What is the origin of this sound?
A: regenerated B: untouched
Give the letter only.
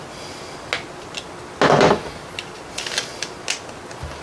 B